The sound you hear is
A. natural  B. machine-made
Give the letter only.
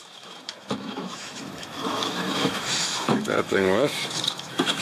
B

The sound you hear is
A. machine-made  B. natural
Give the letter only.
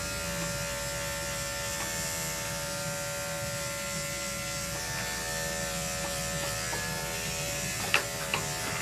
B